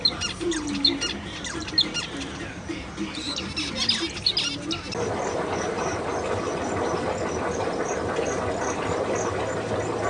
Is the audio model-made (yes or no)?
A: no